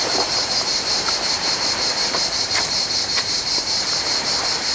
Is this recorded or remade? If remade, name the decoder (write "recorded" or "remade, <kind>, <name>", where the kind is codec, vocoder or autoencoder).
remade, vocoder, BigVGAN v2